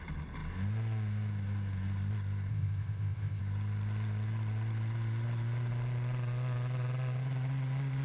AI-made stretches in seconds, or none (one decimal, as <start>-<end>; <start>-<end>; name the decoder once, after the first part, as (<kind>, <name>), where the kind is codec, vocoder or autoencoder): 2.5-3.4 (codec, ZipCodec)